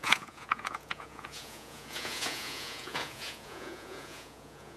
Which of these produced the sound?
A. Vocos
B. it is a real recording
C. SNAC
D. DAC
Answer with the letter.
A